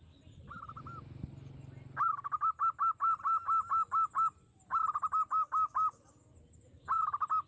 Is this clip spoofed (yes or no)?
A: no